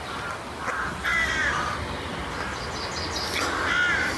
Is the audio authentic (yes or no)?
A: yes